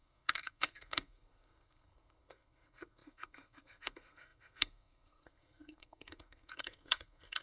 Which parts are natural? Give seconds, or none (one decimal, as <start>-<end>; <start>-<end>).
none